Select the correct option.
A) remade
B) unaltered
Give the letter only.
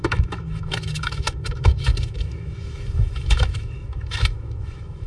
A